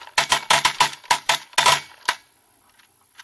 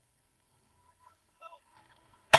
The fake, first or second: second